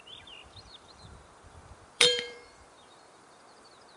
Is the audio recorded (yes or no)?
no